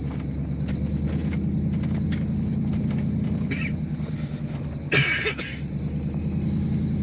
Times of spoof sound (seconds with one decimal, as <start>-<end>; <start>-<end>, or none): none